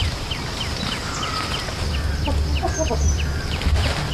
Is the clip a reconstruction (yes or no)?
yes